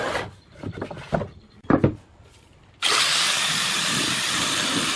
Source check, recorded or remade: recorded